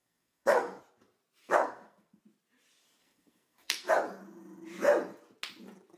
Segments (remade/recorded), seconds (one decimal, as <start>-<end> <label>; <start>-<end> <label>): 0.0-0.8 remade; 0.8-1.4 recorded; 1.4-2.2 remade; 2.2-3.0 recorded; 3.0-3.9 remade; 3.9-6.0 recorded